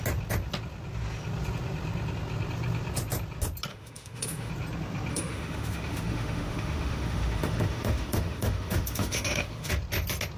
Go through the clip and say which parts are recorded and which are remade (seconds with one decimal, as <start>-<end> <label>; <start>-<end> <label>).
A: 0.0-3.7 recorded; 3.7-4.5 remade; 4.5-5.1 recorded; 5.1-9.7 remade; 9.7-10.4 recorded